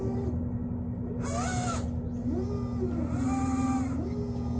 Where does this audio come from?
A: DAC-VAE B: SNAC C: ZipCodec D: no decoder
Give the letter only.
D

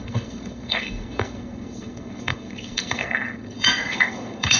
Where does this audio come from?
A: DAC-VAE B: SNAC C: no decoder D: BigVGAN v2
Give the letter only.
B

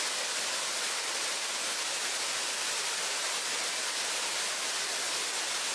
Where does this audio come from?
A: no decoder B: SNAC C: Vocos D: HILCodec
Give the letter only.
A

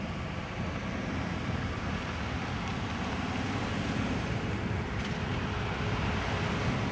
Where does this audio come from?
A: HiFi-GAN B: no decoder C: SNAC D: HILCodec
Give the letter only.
B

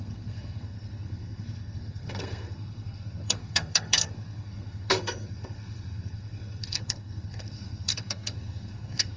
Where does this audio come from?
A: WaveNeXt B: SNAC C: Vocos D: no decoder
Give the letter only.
B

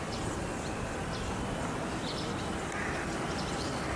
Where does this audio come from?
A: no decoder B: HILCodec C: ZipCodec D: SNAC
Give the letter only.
A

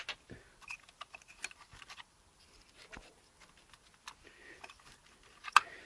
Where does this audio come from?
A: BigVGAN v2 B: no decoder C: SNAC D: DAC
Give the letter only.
B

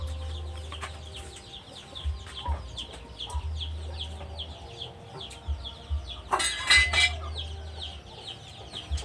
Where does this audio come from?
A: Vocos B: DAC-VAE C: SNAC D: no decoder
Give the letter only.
D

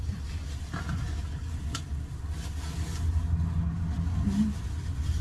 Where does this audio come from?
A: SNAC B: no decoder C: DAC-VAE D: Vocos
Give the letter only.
B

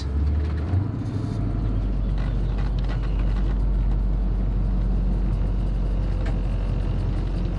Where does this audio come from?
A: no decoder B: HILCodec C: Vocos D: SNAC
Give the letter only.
A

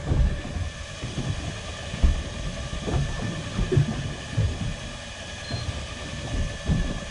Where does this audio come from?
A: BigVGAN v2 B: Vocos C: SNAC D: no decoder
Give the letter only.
D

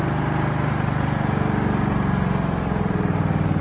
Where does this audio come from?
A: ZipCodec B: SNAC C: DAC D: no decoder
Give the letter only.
D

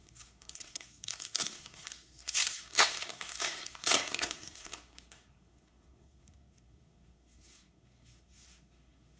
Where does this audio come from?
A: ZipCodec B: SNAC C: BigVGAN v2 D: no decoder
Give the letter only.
B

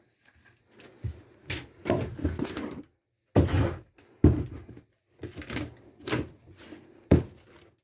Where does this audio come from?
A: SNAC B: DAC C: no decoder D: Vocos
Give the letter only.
C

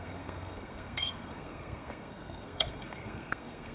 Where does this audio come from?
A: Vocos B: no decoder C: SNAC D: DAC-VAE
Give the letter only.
C